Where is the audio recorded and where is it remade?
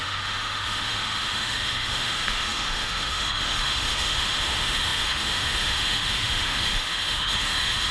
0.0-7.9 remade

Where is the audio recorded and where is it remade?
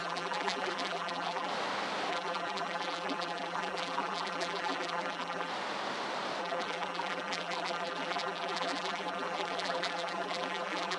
0.0-1.5 remade; 1.5-2.1 recorded; 2.1-5.5 remade; 5.5-6.4 recorded; 6.4-11.0 remade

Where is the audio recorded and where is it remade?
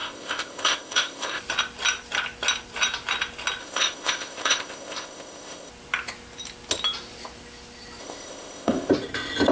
0.0-1.4 remade; 1.4-3.6 recorded; 3.6-5.7 remade; 5.7-8.0 recorded; 8.0-8.9 remade; 8.9-9.5 recorded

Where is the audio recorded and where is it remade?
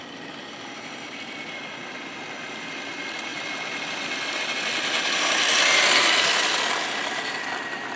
0.0-1.8 remade; 1.8-2.5 recorded; 2.5-8.0 remade